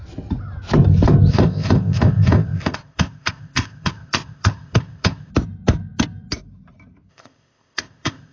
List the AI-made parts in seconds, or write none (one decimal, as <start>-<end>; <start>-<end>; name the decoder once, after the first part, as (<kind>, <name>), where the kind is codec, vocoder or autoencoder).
1.3-5.3 (codec, ZipCodec); 7.1-8.3